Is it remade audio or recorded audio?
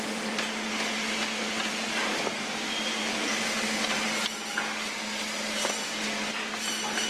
recorded